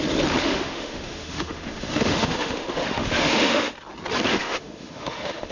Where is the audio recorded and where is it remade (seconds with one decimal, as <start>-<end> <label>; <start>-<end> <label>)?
0.0-0.4 recorded; 0.4-3.7 remade; 3.7-4.3 recorded; 4.3-5.5 remade